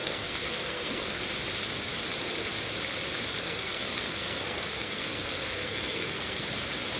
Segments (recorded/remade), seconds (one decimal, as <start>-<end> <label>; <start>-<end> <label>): 0.0-1.2 remade; 1.2-3.4 recorded; 3.4-6.5 remade; 6.5-7.0 recorded